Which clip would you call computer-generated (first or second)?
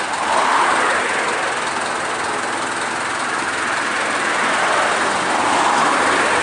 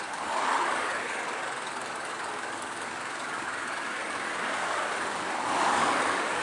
second